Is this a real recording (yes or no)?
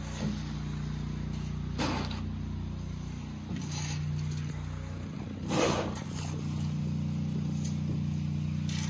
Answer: yes